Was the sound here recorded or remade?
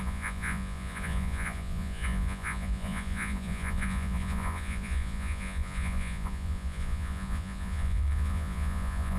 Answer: remade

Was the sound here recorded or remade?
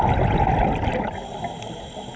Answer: recorded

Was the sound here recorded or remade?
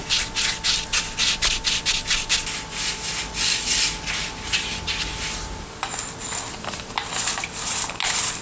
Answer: recorded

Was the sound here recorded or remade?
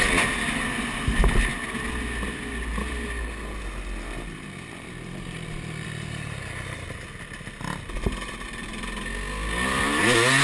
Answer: recorded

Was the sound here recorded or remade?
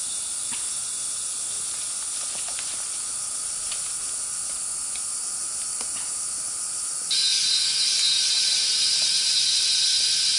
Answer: recorded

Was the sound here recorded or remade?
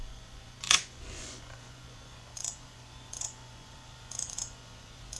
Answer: remade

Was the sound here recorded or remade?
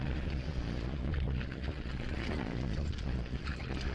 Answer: remade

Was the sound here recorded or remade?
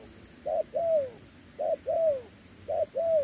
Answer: recorded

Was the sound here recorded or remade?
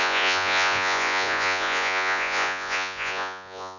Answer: remade